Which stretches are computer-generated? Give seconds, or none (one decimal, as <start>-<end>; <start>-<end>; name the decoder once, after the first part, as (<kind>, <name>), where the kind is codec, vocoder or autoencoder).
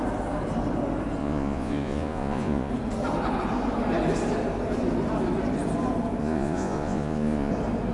1.2-2.7 (vocoder, Vocos); 6.2-7.5